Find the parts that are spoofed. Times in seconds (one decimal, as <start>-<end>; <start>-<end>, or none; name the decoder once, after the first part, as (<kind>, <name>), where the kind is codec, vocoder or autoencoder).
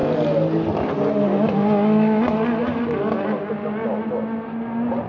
none